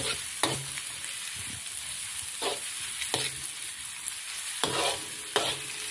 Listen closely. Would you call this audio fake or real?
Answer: real